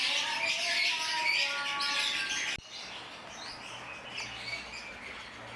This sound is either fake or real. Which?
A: real